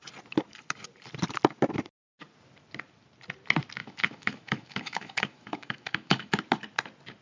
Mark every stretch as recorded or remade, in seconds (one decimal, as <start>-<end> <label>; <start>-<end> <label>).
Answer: 0.0-3.8 recorded; 3.8-6.3 remade; 6.3-7.2 recorded